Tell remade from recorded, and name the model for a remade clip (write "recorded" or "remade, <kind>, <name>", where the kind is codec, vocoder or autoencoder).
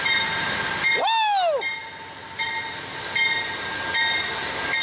recorded